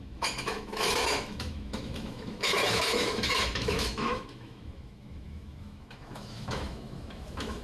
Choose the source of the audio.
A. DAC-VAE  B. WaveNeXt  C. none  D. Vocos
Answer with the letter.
A